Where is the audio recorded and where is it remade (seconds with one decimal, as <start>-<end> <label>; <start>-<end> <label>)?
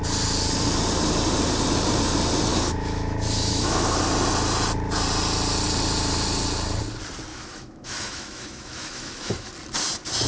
0.0-2.5 recorded; 2.5-4.0 remade; 4.0-7.3 recorded; 7.3-9.5 remade; 9.5-10.3 recorded